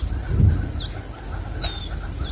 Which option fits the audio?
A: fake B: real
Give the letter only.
B